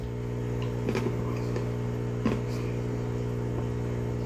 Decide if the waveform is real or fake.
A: real